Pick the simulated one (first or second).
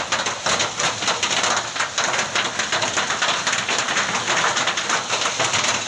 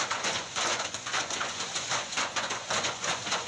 second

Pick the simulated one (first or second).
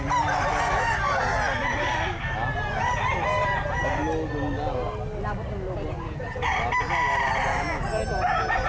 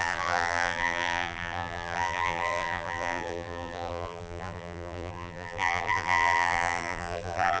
second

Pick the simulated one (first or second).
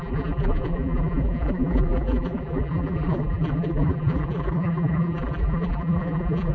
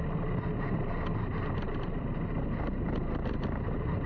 first